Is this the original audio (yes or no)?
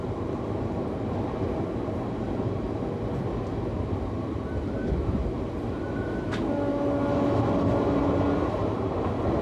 yes